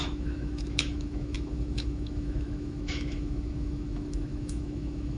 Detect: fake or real fake